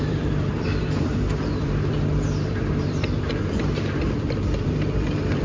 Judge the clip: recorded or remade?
remade